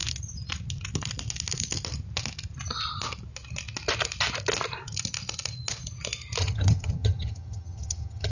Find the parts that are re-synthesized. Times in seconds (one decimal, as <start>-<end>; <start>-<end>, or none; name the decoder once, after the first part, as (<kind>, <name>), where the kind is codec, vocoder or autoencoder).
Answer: 6.4-8.3 (vocoder, HiFi-GAN)